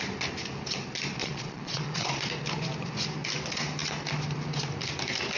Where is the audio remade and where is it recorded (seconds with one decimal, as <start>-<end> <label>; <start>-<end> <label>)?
0.0-1.2 recorded; 1.2-2.2 remade; 2.2-5.4 recorded